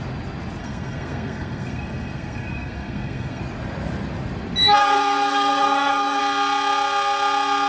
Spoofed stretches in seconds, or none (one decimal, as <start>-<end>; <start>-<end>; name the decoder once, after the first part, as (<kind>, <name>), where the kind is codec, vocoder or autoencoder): 0.6-3.4 (codec, SNAC); 4.8-6.2